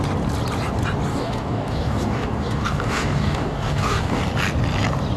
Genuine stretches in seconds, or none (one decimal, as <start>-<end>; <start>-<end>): 0.0-1.1; 4.2-5.2